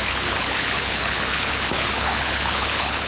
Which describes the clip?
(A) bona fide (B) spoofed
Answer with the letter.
B